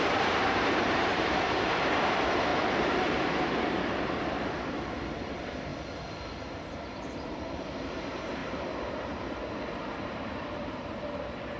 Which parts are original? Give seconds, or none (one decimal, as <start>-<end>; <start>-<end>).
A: 5.7-6.4; 8.4-8.9